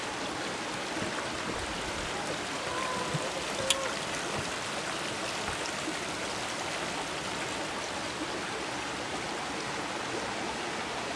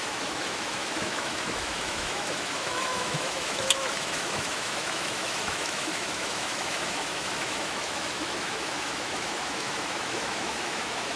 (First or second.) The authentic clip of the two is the first